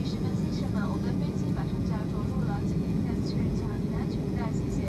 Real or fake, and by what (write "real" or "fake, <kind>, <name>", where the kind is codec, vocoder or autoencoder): fake, vocoder, Vocos